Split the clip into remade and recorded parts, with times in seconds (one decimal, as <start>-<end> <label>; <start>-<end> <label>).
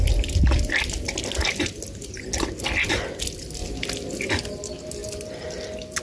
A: 0.0-6.0 recorded